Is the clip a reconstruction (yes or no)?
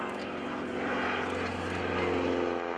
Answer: no